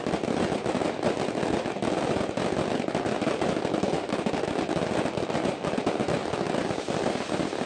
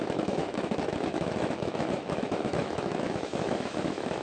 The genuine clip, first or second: first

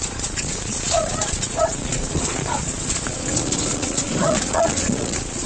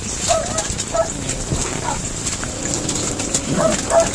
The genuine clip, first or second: second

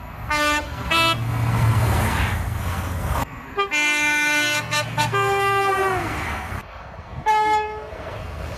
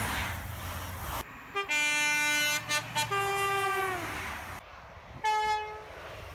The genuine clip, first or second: second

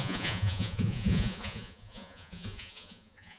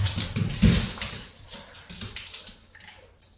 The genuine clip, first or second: second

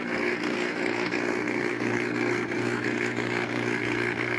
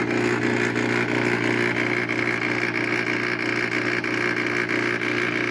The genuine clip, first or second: second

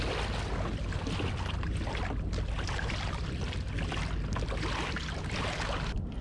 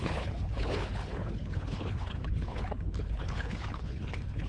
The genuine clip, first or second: first